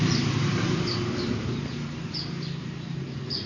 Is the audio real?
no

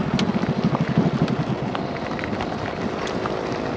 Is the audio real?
yes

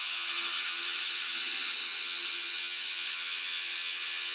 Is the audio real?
no